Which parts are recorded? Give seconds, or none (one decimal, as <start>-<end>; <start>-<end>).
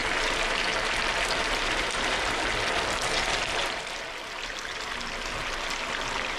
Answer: 0.6-1.4; 2.4-3.6; 4.5-6.4